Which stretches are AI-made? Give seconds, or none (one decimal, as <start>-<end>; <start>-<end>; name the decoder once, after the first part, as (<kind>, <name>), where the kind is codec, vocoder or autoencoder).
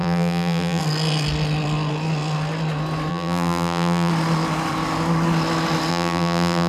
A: 0.0-0.8 (vocoder, BigVGAN v2); 3.1-4.1; 5.9-6.7